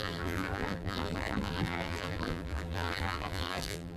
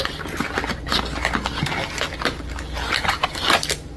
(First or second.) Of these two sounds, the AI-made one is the first